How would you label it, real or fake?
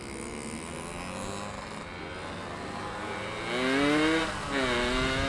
real